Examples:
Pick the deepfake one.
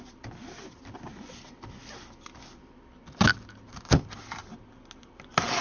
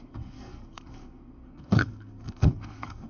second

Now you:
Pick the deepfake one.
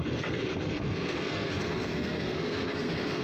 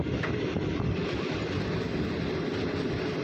first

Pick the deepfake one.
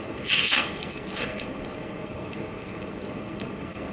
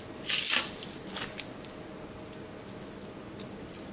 first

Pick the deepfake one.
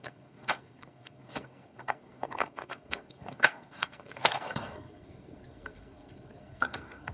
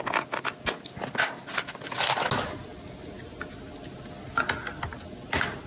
first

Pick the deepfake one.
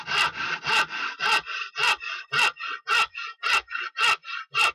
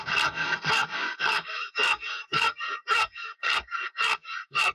second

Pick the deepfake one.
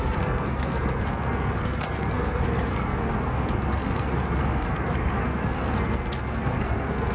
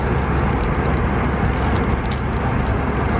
first